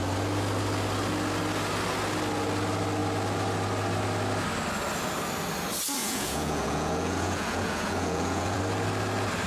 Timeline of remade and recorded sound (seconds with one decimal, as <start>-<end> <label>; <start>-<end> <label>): 0.0-6.0 recorded; 6.0-8.6 remade; 8.6-9.5 recorded